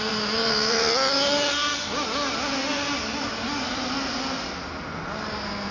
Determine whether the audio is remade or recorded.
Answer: recorded